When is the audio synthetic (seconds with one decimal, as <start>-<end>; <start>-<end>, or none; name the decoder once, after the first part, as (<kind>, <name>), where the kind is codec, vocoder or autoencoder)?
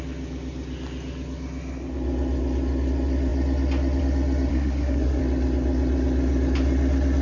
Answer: 4.5-5.2 (codec, SNAC)